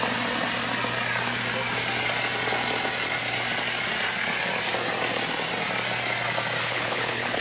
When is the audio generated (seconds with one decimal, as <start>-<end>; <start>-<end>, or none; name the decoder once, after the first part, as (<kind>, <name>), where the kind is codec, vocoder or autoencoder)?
6.6-7.4 (codec, HILCodec)